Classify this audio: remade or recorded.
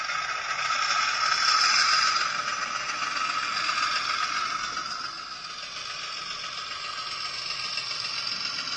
recorded